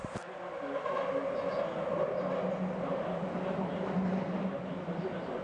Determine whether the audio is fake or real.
real